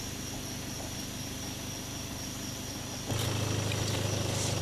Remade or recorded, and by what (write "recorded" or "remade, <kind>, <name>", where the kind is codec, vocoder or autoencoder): recorded